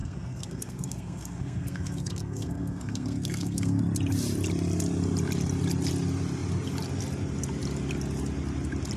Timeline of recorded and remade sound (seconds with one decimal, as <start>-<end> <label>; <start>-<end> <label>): 0.0-3.8 remade; 3.8-9.0 recorded